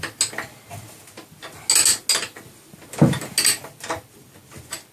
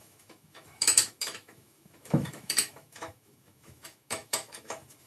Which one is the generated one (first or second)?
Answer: second